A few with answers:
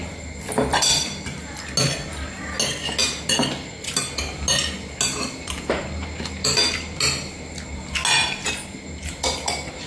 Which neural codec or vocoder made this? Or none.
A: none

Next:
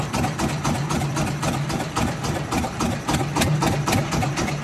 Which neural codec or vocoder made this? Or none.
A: vocoder, BigVGAN v2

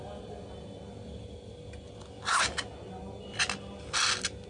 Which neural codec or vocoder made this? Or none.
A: none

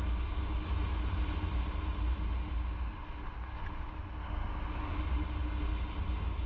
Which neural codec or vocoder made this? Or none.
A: none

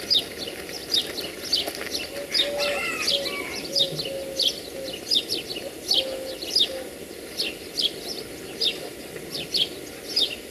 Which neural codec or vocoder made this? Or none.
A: none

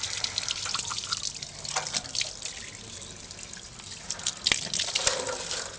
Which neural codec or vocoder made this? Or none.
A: none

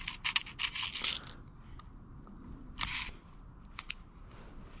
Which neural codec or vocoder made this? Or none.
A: none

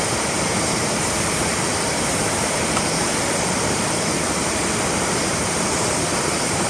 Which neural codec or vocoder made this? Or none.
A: vocoder, BigVGAN v2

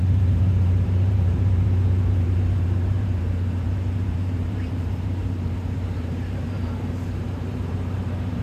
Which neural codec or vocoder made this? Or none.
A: vocoder, BigVGAN v2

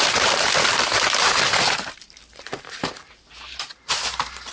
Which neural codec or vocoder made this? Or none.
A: vocoder, BigVGAN v2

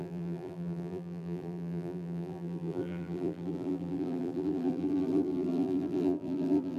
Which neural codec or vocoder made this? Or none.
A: vocoder, BigVGAN v2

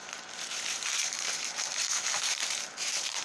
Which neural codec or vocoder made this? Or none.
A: vocoder, BigVGAN v2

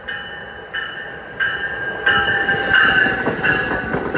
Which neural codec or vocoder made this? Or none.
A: none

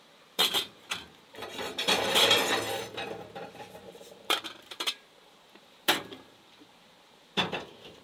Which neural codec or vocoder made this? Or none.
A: vocoder, BigVGAN v2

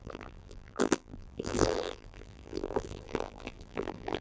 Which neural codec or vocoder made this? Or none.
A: vocoder, BigVGAN v2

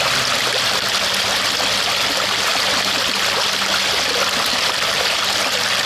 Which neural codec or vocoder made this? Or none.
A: none